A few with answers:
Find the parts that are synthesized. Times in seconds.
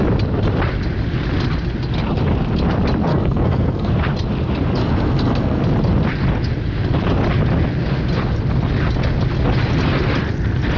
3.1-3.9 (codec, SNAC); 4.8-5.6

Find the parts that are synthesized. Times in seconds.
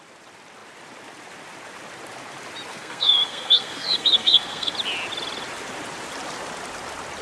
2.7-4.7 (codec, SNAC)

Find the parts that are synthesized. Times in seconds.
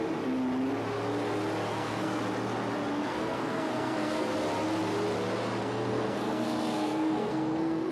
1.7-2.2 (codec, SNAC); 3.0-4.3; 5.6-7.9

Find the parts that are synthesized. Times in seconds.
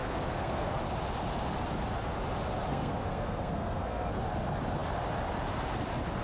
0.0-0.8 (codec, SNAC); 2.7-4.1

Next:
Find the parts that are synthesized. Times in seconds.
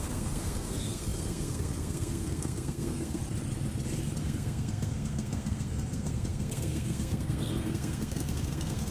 0.0-3.2 (codec, SNAC); 4.2-8.9